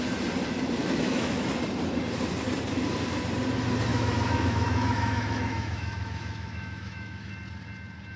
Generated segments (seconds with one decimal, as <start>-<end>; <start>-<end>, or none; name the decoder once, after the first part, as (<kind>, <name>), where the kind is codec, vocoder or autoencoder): 0.8-1.5 (autoencoder, DAC-VAE); 3.9-7.3